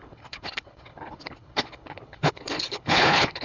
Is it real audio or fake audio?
fake